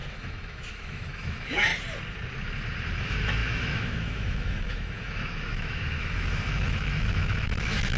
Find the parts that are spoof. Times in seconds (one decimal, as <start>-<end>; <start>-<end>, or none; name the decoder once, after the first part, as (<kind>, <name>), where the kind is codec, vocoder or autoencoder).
0.0-1.7 (autoencoder, DAC-VAE); 3.0-8.0